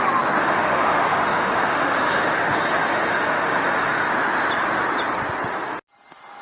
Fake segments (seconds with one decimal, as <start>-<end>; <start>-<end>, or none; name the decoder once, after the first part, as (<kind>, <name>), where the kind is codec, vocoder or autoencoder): 0.4-4.1 (autoencoder, DAC-VAE)